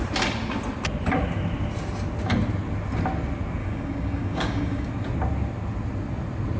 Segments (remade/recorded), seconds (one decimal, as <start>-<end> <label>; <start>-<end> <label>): 0.0-3.6 recorded; 3.6-4.9 remade; 4.9-6.6 recorded